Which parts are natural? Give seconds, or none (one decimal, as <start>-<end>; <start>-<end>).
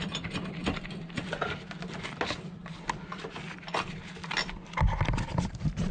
0.0-5.9